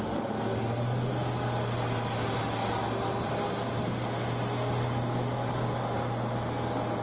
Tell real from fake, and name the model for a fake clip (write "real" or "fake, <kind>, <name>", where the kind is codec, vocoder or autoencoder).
real